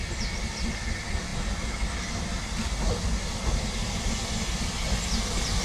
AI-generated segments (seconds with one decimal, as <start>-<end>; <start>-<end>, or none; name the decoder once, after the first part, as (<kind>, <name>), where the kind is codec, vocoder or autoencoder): none